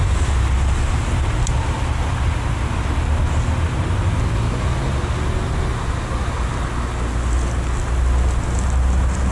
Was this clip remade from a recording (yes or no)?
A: no